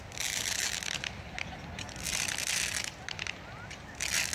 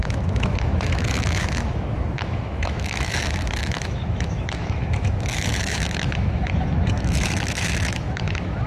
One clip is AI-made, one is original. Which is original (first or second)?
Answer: first